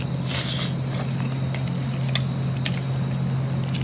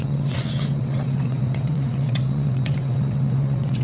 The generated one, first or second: second